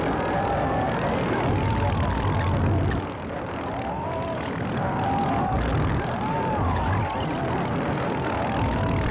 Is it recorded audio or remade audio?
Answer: recorded